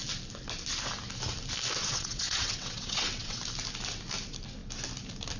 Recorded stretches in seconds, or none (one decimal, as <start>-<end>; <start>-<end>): 0.0-1.8; 3.4-5.4